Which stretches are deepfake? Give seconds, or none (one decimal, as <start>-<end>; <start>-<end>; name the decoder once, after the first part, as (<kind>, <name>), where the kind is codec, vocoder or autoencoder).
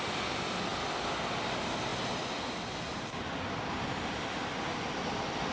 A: none